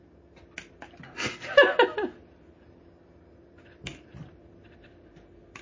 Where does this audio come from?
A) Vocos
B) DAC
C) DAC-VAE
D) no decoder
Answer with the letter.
D